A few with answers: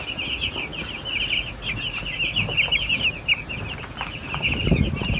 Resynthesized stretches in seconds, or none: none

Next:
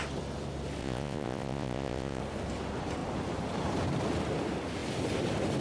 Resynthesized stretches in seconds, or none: 0.8-2.2 (vocoder, Vocos)

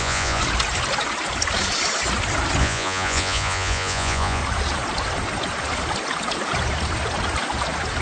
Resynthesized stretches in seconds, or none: 0.0-0.4 (vocoder, Vocos); 2.6-4.4

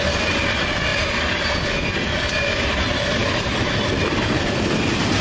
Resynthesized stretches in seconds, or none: none

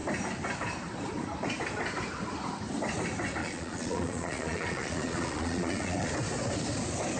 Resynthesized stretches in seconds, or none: 3.4-6.1 (vocoder, Vocos)

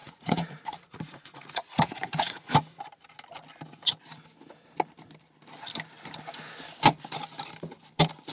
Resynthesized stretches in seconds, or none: 0.0-2.8 (vocoder, Vocos)